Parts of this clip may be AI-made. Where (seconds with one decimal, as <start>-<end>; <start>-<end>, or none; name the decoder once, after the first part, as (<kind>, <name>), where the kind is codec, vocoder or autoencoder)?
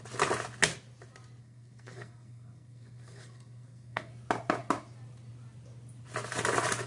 1.4-4.1 (codec, SNAC)